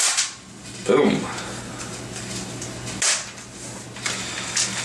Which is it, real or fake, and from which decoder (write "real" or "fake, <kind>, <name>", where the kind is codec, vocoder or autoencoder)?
real